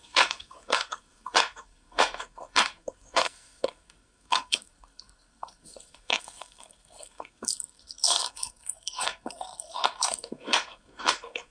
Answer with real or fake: fake